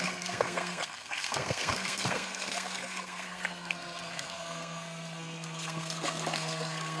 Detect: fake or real fake